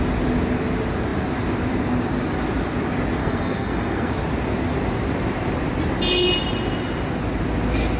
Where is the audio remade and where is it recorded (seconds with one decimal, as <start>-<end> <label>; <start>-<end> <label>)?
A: 0.0-3.2 recorded; 3.2-4.1 remade; 4.1-8.0 recorded